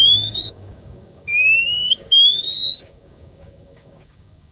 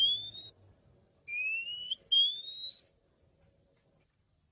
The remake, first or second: first